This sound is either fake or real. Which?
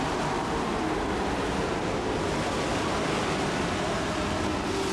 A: real